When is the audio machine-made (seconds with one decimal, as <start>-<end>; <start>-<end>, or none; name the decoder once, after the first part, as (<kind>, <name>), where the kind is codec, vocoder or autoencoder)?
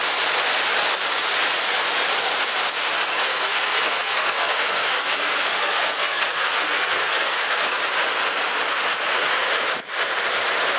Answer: 3.1-7.8 (codec, SNAC)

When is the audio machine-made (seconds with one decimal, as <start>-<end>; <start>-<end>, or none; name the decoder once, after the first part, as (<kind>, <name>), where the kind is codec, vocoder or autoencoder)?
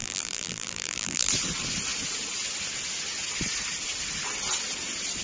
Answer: 0.0-1.3 (vocoder, BigVGAN v2)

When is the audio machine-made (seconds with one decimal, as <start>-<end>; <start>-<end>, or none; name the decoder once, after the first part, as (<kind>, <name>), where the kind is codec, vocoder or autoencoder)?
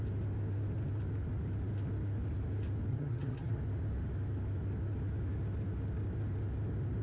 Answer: 2.9-3.6 (vocoder, HiFi-GAN)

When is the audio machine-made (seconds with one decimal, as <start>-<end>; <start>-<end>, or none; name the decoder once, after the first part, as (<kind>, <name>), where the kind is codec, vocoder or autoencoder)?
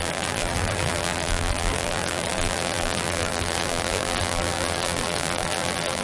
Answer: 0.0-6.0 (vocoder, BigVGAN v2)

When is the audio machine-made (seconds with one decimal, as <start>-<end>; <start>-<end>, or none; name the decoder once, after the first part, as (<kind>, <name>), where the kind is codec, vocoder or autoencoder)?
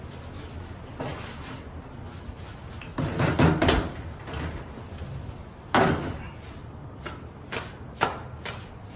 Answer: none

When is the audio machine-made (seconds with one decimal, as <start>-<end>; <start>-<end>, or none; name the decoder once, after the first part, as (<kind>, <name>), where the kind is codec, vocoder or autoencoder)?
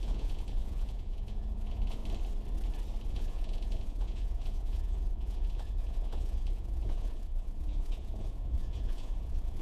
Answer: 0.0-2.0 (vocoder, Vocos); 3.1-9.6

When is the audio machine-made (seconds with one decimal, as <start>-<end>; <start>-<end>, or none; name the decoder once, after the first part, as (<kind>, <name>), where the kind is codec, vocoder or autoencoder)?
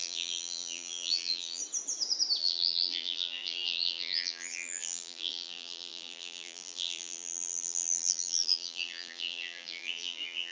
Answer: 0.0-1.6 (vocoder, BigVGAN v2); 2.4-10.5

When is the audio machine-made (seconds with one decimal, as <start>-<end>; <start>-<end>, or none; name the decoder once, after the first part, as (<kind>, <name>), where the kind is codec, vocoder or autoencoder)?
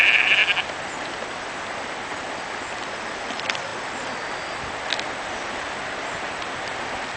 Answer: none